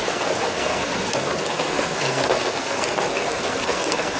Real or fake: fake